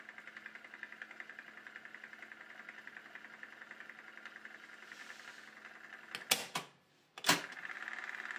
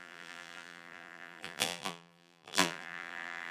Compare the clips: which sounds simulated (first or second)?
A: second